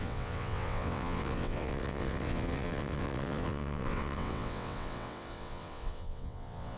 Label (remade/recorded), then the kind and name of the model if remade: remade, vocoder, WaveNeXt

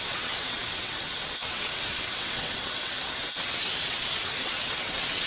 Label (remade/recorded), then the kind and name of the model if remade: remade, vocoder, WaveNeXt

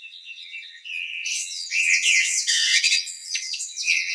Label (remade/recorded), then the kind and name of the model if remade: remade, vocoder, WaveNeXt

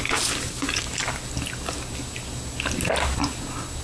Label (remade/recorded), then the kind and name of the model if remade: recorded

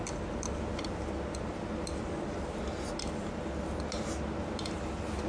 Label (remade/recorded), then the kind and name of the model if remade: recorded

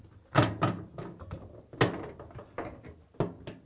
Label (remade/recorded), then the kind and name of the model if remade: recorded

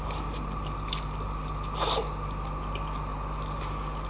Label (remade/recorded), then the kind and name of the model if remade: recorded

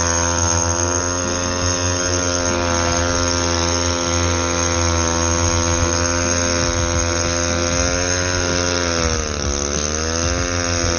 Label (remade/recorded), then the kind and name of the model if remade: recorded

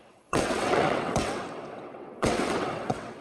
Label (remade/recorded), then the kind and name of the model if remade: remade, vocoder, WaveNeXt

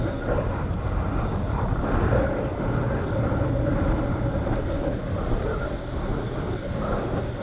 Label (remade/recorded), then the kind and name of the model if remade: recorded